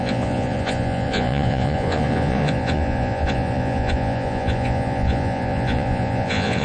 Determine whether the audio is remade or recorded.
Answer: remade